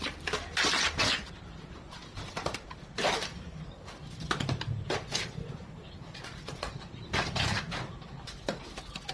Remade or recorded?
recorded